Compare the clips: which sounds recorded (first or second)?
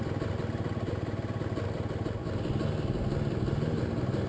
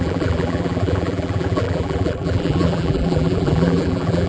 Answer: first